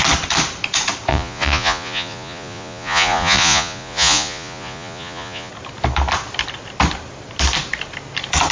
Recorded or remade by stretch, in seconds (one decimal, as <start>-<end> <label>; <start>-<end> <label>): 0.0-1.1 recorded; 1.1-5.5 remade; 5.5-8.5 recorded